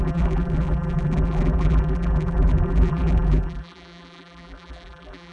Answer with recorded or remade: remade